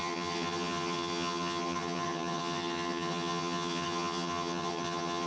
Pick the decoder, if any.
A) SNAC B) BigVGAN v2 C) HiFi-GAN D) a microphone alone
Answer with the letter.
C